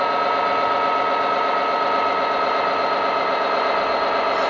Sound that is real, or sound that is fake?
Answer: real